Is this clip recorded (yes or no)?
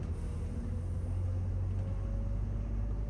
yes